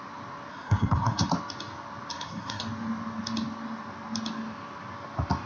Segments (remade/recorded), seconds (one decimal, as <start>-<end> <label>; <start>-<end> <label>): 0.0-0.5 recorded; 0.5-1.3 remade; 1.3-2.1 recorded; 2.1-2.6 remade; 2.6-5.5 recorded